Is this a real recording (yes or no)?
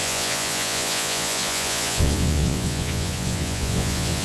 no